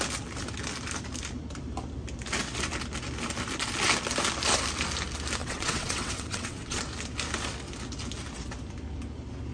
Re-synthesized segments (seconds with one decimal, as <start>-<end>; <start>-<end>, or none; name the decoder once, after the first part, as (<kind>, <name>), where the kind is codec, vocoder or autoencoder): 5.4-6.8 (vocoder, WaveNeXt)